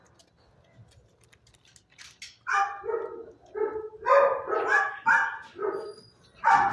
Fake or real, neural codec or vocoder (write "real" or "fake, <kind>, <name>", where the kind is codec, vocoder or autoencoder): real